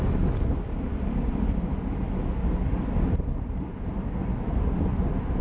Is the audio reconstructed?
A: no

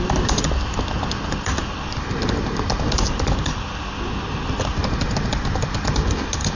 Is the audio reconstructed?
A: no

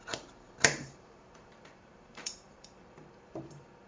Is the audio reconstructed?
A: yes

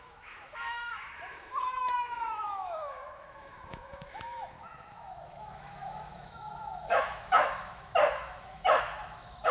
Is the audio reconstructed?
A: yes